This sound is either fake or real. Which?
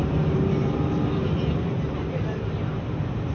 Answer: real